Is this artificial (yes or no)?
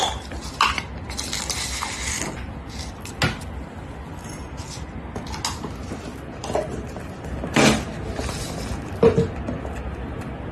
no